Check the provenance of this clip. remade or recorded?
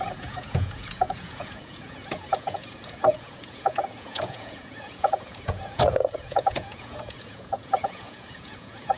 remade